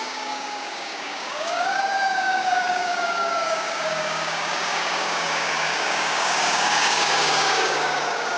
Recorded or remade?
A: remade